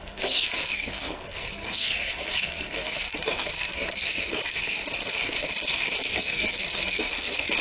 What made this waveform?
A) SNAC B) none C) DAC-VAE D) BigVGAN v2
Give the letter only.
A